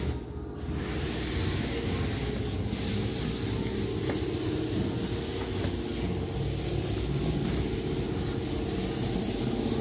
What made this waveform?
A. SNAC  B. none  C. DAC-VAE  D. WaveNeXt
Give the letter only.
B